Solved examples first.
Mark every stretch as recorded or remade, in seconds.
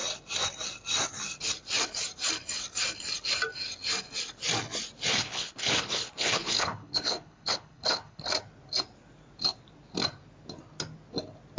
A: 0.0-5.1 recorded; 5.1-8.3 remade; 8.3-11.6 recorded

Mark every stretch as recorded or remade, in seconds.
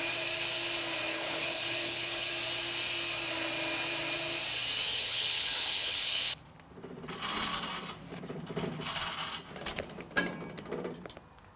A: 0.0-1.1 recorded; 1.1-2.3 remade; 2.3-5.0 recorded; 5.0-6.3 remade; 6.3-11.6 recorded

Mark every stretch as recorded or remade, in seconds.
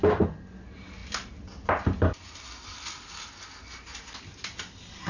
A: 0.0-5.1 recorded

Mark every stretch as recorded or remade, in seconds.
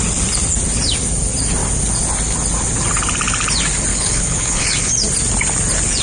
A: 0.0-3.9 recorded; 3.9-4.9 remade; 4.9-6.0 recorded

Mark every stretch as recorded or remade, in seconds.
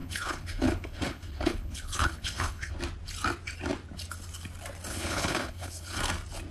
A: 0.0-2.7 remade; 2.7-4.9 recorded; 4.9-6.0 remade; 6.0-6.5 recorded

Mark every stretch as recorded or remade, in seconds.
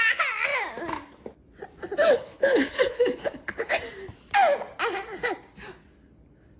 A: 0.0-2.1 recorded; 2.1-3.8 remade; 3.8-6.6 recorded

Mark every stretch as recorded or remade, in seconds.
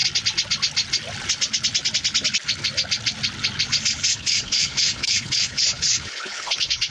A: 0.0-4.1 recorded; 4.1-6.9 remade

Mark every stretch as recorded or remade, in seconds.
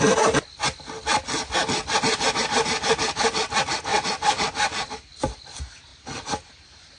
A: 0.0-7.0 recorded